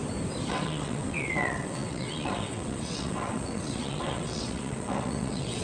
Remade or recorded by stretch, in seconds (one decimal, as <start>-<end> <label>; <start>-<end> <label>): 0.0-0.5 recorded; 0.5-5.6 remade